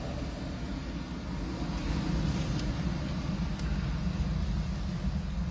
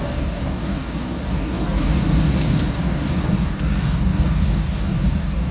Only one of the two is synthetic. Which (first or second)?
second